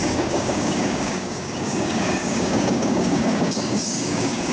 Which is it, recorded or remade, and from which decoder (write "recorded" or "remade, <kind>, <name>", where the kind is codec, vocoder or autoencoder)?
remade, codec, DAC